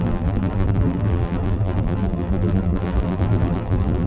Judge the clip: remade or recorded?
remade